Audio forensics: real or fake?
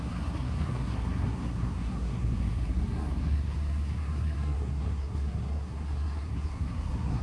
fake